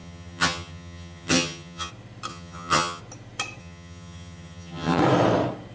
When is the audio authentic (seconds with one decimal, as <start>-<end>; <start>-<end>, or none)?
1.9-2.3; 3.0-3.6; 5.0-5.7